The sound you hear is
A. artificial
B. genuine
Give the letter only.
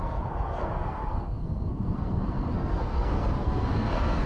A